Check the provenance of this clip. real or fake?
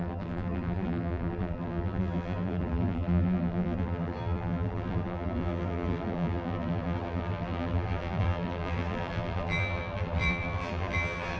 fake